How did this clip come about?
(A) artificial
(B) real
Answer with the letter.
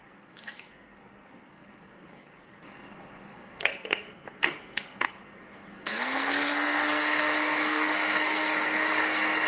A